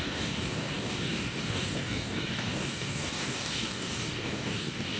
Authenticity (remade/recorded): remade